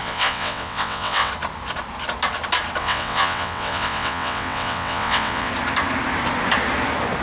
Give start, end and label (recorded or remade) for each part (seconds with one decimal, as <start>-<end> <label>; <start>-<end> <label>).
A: 0.0-1.3 remade; 1.3-2.8 recorded; 2.8-5.5 remade; 5.5-7.2 recorded